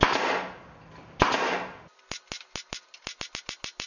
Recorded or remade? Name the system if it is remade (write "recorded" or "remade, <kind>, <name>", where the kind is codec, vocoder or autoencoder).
recorded